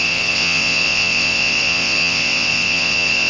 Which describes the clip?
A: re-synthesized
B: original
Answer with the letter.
A